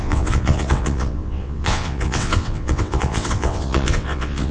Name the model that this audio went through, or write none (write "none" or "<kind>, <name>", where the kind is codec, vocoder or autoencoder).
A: vocoder, WaveNeXt